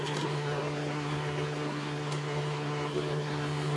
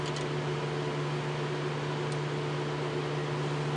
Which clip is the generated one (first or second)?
first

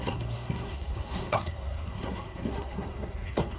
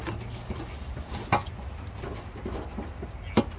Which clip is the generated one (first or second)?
first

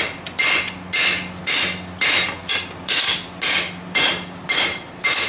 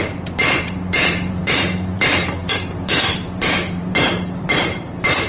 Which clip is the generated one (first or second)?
second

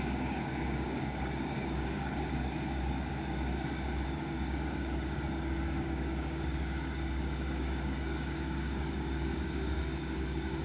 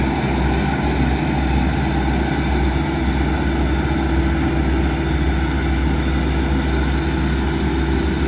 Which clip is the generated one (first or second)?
first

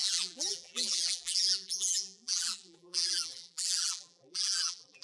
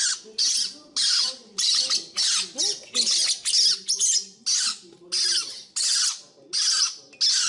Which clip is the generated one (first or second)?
first